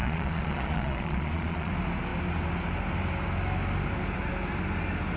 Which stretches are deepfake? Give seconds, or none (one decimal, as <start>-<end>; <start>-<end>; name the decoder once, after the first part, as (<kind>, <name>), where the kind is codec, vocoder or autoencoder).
0.0-1.7 (vocoder, Vocos)